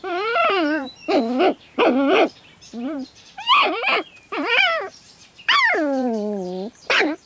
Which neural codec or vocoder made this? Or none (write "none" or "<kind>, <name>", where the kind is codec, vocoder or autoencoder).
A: vocoder, BigVGAN v2